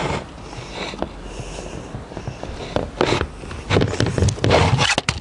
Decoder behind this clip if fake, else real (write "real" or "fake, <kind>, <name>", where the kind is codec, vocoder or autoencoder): real